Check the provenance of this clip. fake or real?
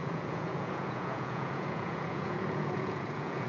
fake